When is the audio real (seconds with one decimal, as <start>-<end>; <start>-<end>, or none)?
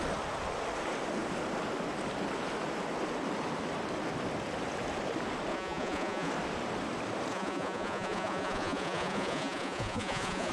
0.0-5.5; 6.3-7.3